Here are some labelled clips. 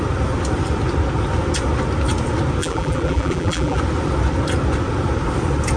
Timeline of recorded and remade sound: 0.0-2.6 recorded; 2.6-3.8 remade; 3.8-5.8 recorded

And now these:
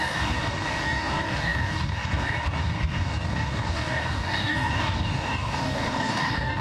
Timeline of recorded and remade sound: 0.0-6.6 remade